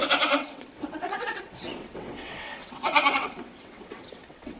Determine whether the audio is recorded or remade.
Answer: remade